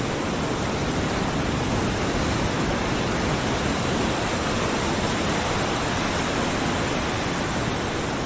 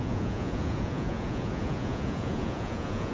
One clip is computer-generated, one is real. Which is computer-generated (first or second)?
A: second